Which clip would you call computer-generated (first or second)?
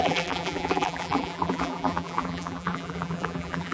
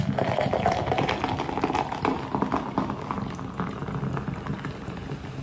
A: first